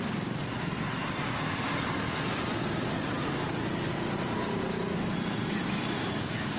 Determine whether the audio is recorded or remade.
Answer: recorded